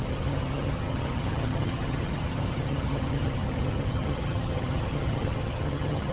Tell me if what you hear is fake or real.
fake